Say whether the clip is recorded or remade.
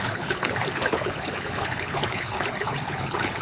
remade